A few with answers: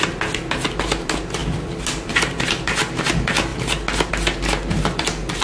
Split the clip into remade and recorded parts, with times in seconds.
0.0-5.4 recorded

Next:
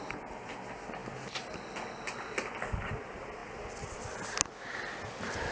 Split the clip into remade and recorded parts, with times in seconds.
0.0-5.5 recorded

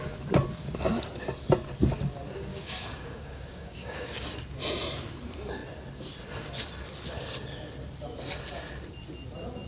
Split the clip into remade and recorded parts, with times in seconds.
0.0-2.5 recorded; 2.5-4.3 remade; 4.3-9.7 recorded